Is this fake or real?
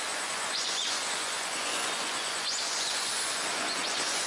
fake